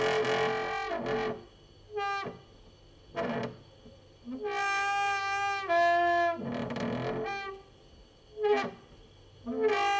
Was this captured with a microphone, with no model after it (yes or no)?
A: yes